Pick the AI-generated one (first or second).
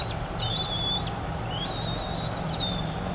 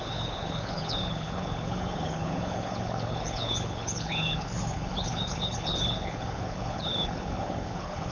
second